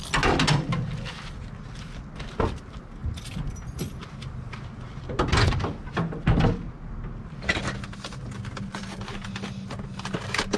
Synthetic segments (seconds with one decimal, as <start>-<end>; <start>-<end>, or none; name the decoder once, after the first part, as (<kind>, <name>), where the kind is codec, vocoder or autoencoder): none